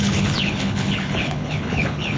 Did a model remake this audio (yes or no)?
yes